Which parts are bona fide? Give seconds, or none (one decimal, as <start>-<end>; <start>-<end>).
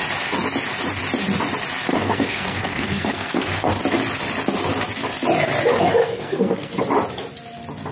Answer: 0.0-1.9; 3.7-6.0; 6.8-7.9